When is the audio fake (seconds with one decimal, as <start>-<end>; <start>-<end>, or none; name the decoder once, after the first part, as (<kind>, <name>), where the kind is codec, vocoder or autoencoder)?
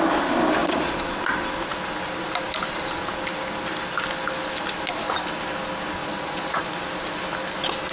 0.6-1.2 (vocoder, Vocos); 6.0-6.7